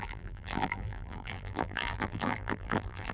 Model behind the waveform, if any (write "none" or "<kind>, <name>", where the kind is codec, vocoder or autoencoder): vocoder, BigVGAN v2